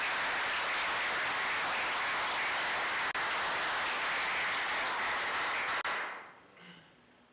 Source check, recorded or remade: recorded